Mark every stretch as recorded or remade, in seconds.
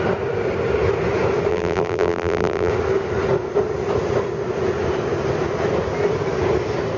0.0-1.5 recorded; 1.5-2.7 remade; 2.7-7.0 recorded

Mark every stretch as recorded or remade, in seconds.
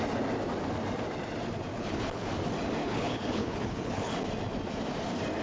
0.0-1.7 recorded; 1.7-2.3 remade; 2.3-2.8 recorded; 2.8-4.1 remade; 4.1-5.4 recorded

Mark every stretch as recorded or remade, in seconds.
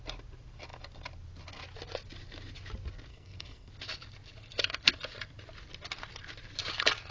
0.0-3.1 recorded; 3.1-3.7 remade; 3.7-7.1 recorded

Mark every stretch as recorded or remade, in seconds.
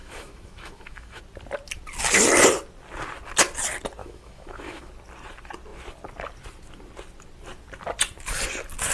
0.0-1.2 remade; 1.2-4.0 recorded; 4.0-4.9 remade; 4.9-8.9 recorded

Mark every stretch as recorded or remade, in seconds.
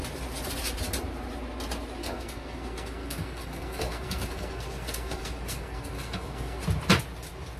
0.0-2.0 recorded; 2.0-6.6 remade; 6.6-7.6 recorded